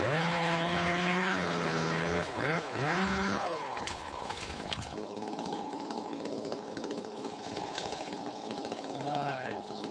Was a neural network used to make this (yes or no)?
yes